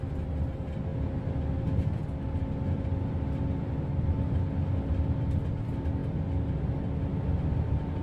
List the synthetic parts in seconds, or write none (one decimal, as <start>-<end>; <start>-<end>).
none